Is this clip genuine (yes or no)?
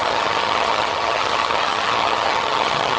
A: no